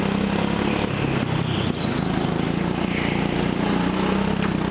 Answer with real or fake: real